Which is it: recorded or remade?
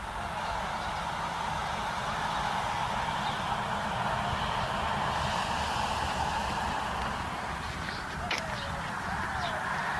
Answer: recorded